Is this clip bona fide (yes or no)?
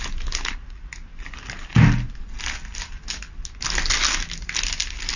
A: yes